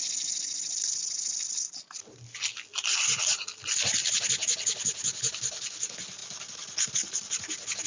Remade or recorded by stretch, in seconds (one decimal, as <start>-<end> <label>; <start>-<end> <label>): 0.0-7.9 recorded